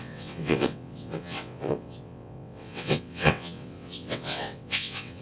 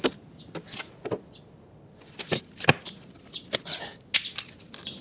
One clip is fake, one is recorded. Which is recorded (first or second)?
second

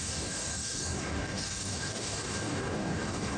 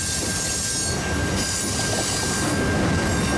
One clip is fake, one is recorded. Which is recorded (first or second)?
second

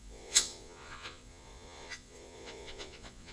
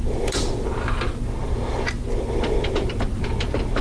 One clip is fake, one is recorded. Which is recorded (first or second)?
second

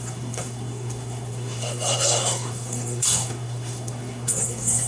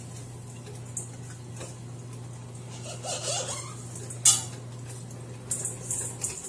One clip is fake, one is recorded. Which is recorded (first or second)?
second